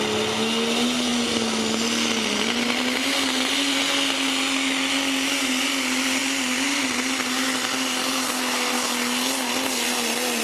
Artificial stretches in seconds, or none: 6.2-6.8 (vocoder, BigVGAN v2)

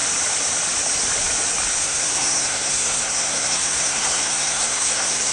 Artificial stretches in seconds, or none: 1.8-5.3 (codec, SNAC)

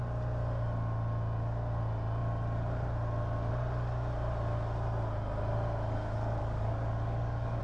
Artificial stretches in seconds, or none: 6.4-7.6 (codec, DAC)

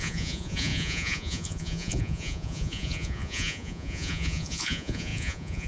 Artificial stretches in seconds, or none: 0.0-5.7 (vocoder, Vocos)

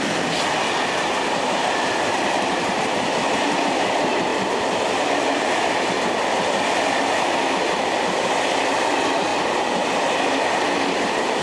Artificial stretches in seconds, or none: 0.0-4.3 (vocoder, BigVGAN v2); 8.7-9.3; 10.6-11.4

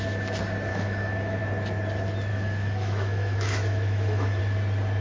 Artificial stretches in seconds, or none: 0.7-1.4 (autoencoder, DAC-VAE); 2.3-4.4

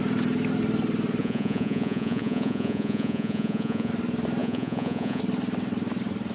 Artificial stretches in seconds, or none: 1.2-3.9 (vocoder, Vocos); 4.4-5.2

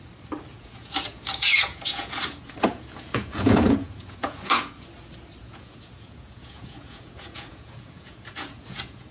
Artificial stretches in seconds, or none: 0.5-4.9 (vocoder, Vocos); 5.4-9.1